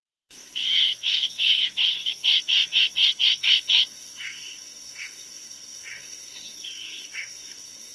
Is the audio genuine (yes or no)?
no